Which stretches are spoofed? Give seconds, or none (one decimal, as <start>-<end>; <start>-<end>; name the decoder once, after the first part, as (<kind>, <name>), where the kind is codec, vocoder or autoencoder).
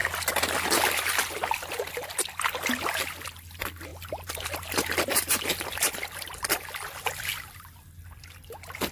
3.9-6.5 (vocoder, BigVGAN v2)